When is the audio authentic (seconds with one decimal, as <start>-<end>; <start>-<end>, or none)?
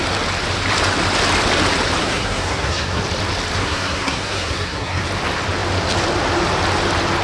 0.0-2.0; 3.0-3.6; 5.0-7.2